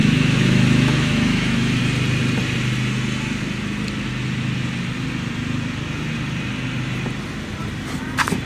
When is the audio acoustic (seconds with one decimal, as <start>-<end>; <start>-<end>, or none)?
1.8-8.5